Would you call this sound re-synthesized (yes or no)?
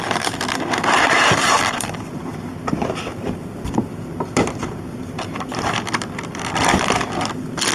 yes